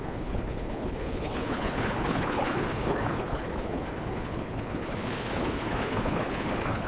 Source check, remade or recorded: remade